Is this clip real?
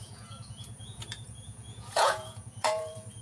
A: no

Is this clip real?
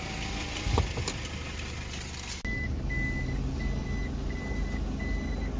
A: yes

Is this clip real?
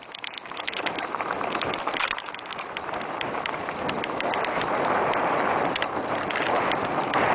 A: no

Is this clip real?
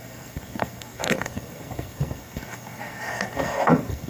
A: no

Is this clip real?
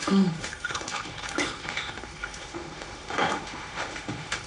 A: no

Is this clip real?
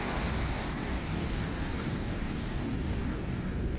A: no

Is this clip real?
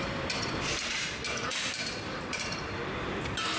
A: no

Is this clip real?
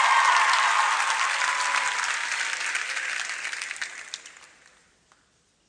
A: yes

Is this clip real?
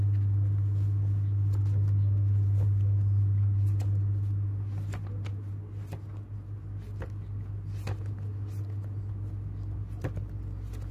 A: yes